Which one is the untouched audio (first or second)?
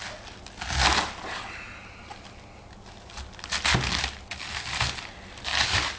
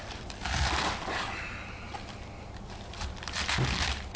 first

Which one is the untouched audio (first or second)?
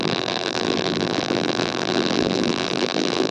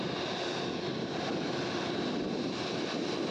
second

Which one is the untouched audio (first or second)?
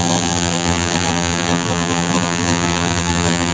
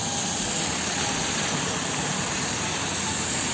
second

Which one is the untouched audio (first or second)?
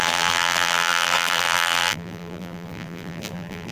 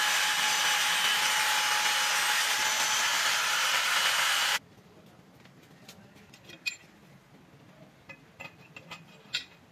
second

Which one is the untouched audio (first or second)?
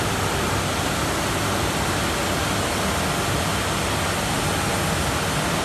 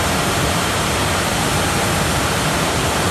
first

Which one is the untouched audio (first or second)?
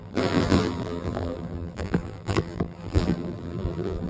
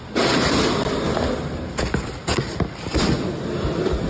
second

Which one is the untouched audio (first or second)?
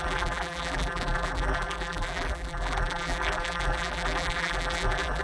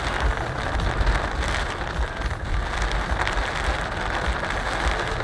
second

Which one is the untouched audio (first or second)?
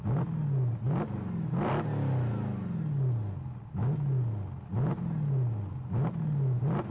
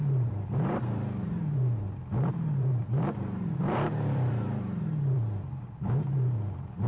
first